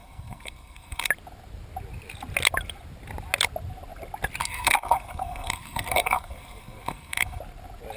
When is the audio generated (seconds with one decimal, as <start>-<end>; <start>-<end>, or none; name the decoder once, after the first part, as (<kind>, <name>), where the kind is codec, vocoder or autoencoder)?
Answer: 0.0-1.1 (codec, SNAC); 4.4-7.4